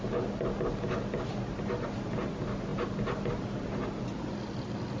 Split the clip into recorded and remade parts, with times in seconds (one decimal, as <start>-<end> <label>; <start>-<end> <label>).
0.0-5.0 recorded